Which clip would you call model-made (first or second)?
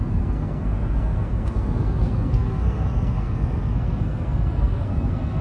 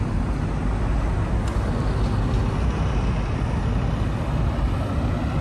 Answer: first